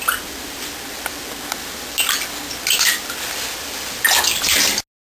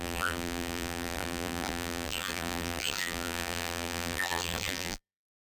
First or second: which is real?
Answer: first